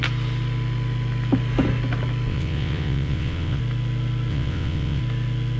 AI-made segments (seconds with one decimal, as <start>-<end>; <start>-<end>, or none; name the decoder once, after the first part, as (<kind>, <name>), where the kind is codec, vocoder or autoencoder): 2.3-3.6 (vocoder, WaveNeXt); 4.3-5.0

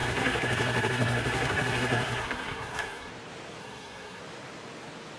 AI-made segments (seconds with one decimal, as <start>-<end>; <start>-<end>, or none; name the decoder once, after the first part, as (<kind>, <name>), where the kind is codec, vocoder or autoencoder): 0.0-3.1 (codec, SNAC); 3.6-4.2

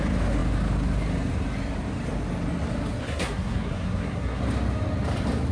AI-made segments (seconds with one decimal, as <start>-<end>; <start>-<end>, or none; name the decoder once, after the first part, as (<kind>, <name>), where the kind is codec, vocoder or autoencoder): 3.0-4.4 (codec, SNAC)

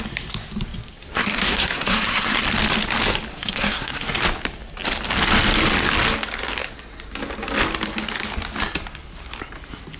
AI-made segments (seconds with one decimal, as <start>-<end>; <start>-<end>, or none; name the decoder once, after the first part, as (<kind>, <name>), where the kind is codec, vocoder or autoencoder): 0.9-2.4 (codec, SNAC); 3.3-4.2

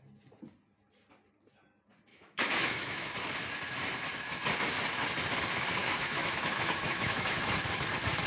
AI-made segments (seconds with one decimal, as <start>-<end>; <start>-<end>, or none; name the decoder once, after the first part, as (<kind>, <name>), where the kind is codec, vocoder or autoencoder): 2.1-3.1 (autoencoder, DAC-VAE); 5.8-7.5

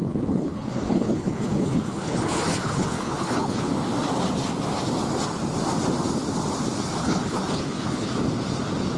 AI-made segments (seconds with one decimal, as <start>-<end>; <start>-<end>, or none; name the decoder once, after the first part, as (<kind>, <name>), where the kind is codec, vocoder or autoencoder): 0.0-3.7 (codec, HILCodec); 7.0-8.1

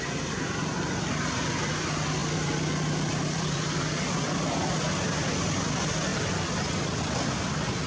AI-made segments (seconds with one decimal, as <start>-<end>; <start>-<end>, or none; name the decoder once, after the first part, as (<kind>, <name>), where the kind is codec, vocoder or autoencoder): 2.2-4.8 (vocoder, BigVGAN v2); 6.1-7.0

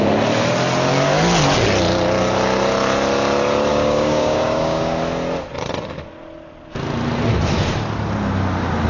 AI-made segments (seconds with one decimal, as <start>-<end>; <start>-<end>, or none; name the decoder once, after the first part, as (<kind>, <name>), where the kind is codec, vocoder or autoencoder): 3.7-5.0 (codec, DAC)